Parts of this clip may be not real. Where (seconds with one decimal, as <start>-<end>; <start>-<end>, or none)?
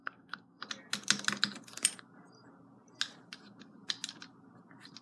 0.0-0.6